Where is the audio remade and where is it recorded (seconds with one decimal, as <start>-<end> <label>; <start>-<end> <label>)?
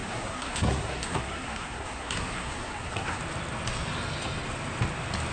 0.0-3.2 remade; 3.2-5.3 recorded